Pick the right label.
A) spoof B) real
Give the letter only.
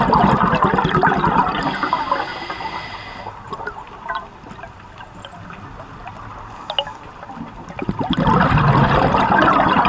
B